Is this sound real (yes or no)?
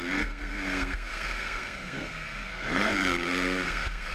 no